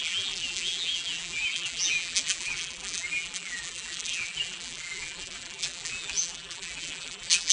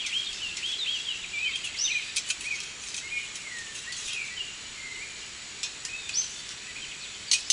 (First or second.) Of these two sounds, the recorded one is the second